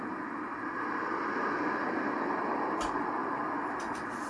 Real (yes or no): yes